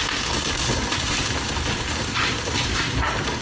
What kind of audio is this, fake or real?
real